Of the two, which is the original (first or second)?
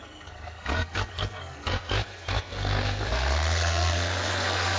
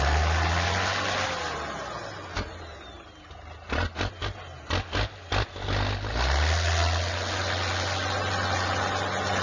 second